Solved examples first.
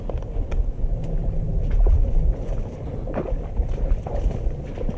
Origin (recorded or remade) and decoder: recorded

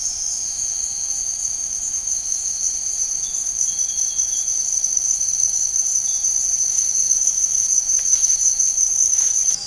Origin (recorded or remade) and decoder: remade, autoencoder, DAC-VAE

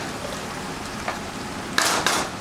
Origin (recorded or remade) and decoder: recorded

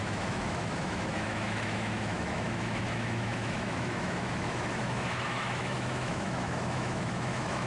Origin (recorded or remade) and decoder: remade, autoencoder, DAC-VAE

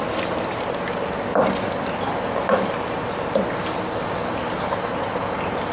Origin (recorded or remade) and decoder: recorded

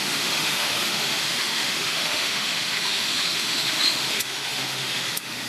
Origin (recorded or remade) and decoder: remade, autoencoder, DAC-VAE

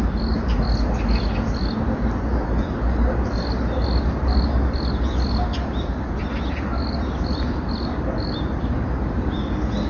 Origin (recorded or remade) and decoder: recorded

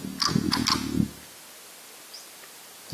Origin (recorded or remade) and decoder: recorded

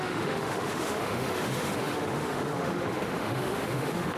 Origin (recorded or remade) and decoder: remade, autoencoder, DAC-VAE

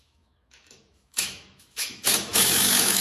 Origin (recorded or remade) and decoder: remade, autoencoder, DAC-VAE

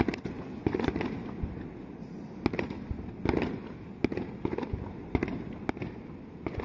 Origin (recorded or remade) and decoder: recorded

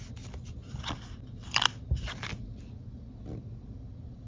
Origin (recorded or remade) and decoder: recorded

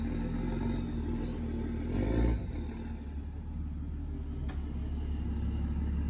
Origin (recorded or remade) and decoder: recorded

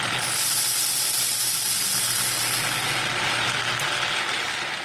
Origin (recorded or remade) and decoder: recorded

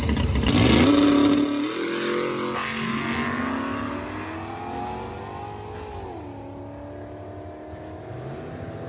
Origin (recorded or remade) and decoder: recorded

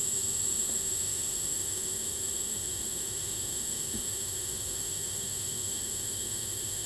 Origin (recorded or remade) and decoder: remade, autoencoder, DAC-VAE